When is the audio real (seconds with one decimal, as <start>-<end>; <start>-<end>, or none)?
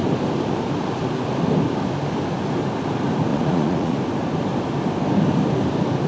0.0-3.3; 4.0-6.1